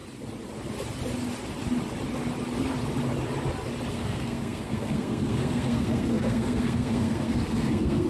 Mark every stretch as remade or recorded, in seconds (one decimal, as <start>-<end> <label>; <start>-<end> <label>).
0.0-3.9 recorded; 3.9-8.1 remade